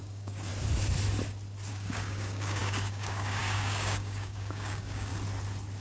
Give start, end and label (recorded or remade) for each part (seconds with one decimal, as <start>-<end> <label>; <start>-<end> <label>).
0.0-0.5 remade; 0.5-1.7 recorded; 1.7-5.1 remade; 5.1-5.8 recorded